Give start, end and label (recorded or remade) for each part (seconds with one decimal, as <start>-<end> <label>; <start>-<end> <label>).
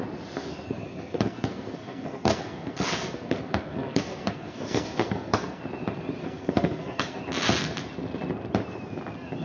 0.0-0.4 recorded; 0.4-5.6 remade; 5.6-6.2 recorded; 6.2-7.2 remade; 7.2-9.4 recorded